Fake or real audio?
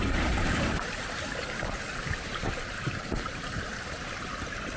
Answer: fake